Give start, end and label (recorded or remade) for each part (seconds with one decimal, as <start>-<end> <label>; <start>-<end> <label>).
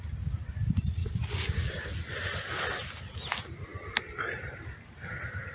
0.0-1.0 recorded; 1.0-1.7 remade; 1.7-5.5 recorded